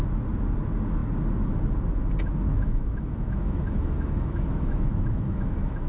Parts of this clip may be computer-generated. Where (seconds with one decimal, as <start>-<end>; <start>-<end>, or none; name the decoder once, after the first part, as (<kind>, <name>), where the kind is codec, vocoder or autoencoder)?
2.5-5.9 (autoencoder, DAC-VAE)